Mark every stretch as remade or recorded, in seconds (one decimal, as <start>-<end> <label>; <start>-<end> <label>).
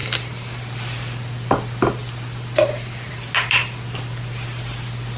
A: 0.0-3.1 remade; 3.1-5.2 recorded